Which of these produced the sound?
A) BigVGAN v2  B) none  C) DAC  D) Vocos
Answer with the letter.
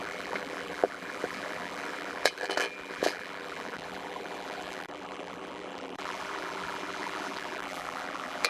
A